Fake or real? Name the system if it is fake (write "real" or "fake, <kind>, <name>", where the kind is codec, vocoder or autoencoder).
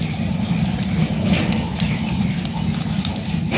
real